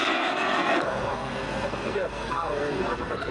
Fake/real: fake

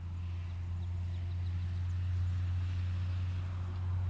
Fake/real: real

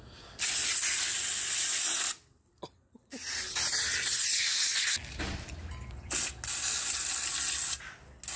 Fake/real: real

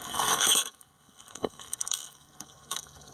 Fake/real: fake